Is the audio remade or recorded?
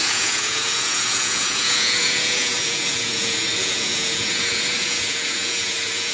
remade